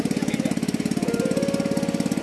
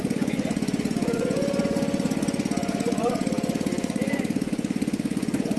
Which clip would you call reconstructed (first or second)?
second